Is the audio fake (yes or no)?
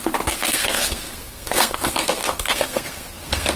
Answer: yes